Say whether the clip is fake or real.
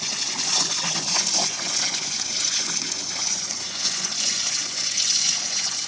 fake